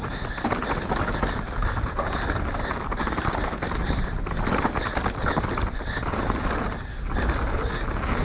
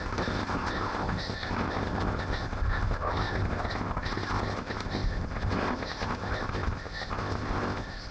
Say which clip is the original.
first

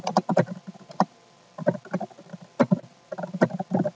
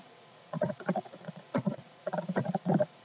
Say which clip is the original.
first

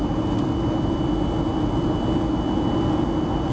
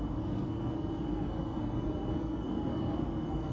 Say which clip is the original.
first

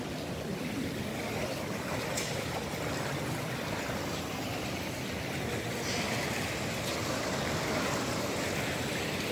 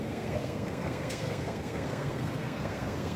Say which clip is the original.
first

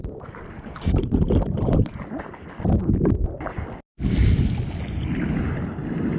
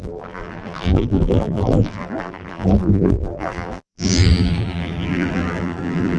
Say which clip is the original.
first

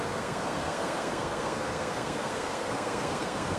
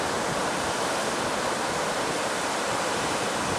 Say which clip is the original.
second